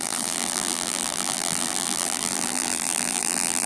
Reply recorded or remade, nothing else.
remade